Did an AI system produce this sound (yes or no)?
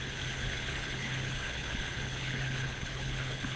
yes